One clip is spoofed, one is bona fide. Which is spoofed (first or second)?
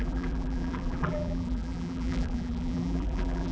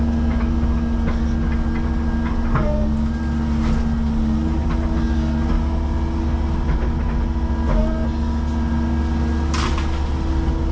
first